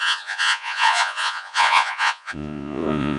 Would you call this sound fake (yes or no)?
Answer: yes